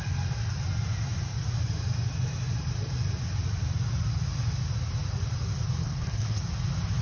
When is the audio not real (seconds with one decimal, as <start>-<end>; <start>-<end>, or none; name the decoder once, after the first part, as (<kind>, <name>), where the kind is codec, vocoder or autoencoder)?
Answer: 5.8-6.4 (codec, HILCodec)

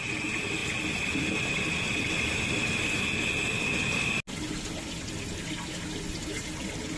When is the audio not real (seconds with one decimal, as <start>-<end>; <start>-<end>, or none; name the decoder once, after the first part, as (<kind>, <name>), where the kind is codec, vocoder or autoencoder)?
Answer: none

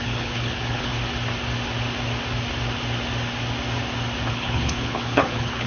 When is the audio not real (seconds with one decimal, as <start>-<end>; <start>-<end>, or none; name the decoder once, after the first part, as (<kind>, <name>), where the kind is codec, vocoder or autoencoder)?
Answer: 0.0-0.9 (codec, HILCodec); 4.3-5.7

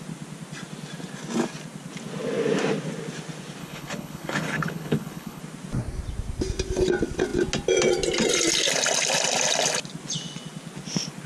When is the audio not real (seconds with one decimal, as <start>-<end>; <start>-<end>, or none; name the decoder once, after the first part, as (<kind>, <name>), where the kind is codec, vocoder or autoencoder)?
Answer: 3.6-5.4 (codec, HILCodec)

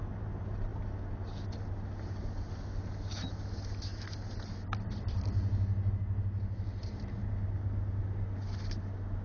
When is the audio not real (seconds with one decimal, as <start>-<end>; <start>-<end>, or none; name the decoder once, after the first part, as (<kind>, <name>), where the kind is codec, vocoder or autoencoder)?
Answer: none